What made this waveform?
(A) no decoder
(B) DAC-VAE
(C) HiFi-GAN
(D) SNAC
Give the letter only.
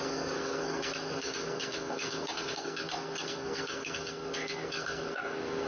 D